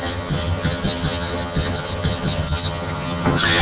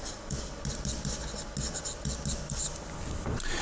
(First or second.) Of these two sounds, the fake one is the first